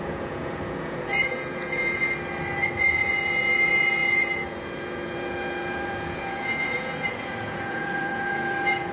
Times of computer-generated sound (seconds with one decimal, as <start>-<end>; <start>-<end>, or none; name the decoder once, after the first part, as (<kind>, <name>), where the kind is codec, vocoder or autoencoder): 0.0-2.0 (vocoder, Vocos); 2.8-8.9